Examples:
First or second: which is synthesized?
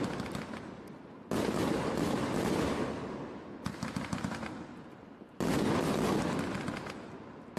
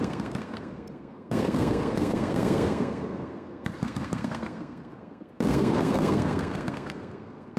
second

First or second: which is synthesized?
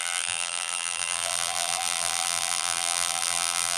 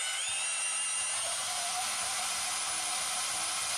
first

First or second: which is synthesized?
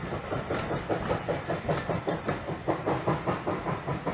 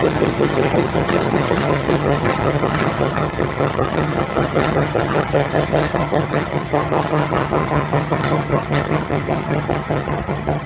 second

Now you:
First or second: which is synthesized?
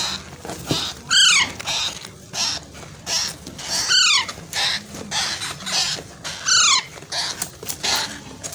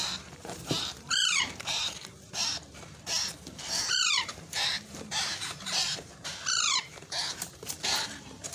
second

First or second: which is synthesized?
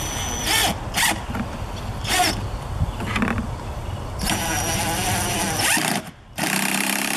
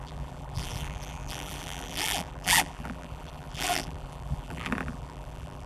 second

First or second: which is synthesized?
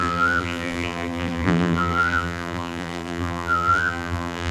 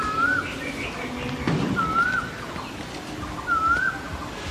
first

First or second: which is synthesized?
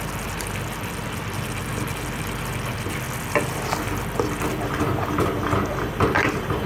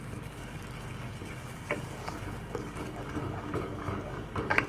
second